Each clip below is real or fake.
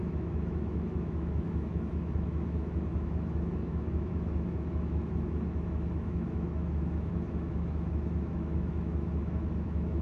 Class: fake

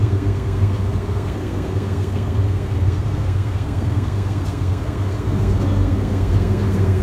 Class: fake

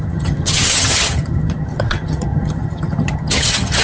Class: fake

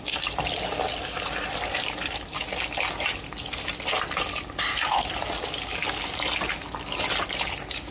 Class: real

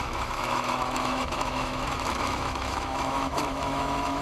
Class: fake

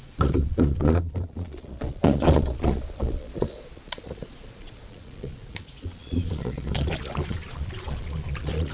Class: fake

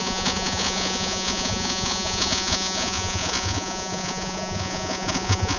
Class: fake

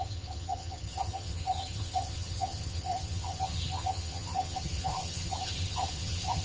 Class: fake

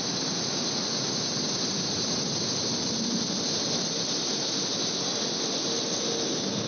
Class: real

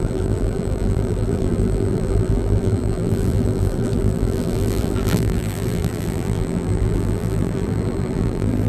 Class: fake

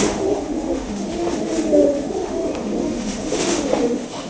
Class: fake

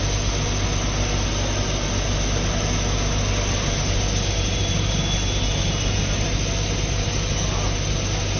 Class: real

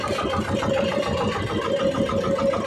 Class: real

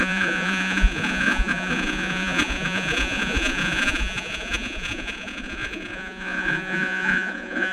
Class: fake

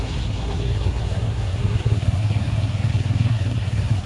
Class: fake